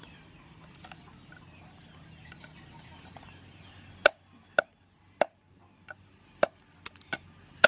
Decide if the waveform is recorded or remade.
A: recorded